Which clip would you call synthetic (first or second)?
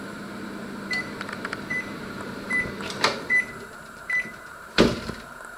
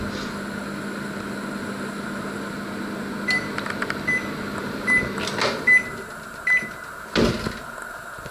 first